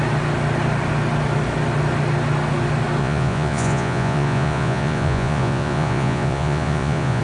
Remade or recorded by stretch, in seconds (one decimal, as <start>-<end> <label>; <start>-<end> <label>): 0.0-3.0 recorded; 3.0-7.2 remade

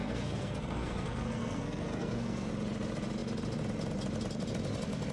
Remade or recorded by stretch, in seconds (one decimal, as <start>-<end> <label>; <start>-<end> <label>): 0.0-2.5 remade; 2.5-5.1 recorded

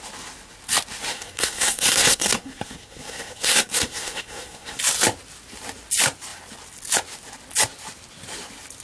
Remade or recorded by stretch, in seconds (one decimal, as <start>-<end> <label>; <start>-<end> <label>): 0.0-1.1 recorded; 1.1-4.8 remade; 4.8-8.8 recorded

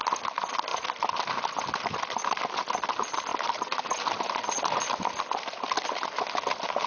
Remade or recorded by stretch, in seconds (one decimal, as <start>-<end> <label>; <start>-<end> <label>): 0.0-6.9 recorded

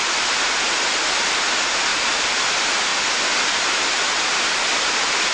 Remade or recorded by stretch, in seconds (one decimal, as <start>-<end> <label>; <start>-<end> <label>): 0.0-1.9 recorded; 1.9-2.4 remade; 2.4-5.3 recorded

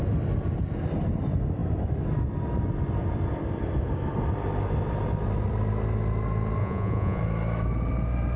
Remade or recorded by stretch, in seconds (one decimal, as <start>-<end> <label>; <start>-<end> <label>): 0.0-6.6 recorded; 6.6-7.2 remade; 7.2-8.4 recorded

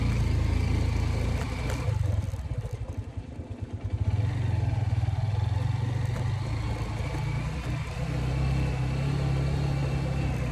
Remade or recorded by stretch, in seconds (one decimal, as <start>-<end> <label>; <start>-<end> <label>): 0.0-10.5 recorded

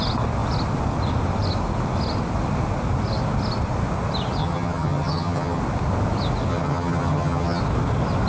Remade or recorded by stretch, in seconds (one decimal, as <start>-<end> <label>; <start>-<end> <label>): 0.0-4.4 recorded; 4.4-5.6 remade; 5.6-6.5 recorded; 6.5-7.6 remade; 7.6-8.3 recorded